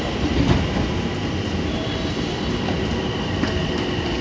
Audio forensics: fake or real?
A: real